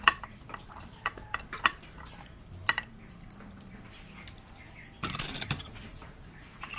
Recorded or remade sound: remade